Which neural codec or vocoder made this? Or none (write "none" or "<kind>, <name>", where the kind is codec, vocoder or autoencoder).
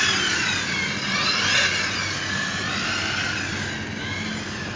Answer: none